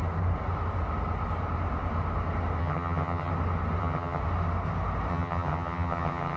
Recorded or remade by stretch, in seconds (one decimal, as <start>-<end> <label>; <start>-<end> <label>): 0.0-2.6 recorded; 2.6-3.3 remade; 3.3-3.8 recorded; 3.8-4.2 remade; 4.2-5.1 recorded; 5.1-6.4 remade